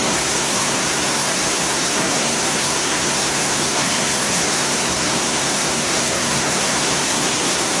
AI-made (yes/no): yes